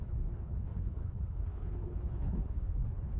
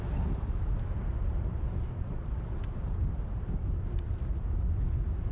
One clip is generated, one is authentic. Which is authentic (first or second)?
second